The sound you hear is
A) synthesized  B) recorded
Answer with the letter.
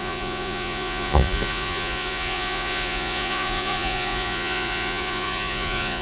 A